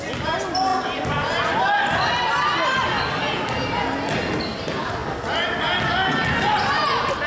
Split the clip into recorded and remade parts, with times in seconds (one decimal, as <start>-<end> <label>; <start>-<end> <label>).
0.0-7.3 recorded